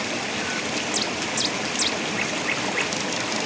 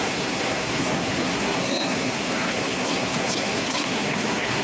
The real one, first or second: first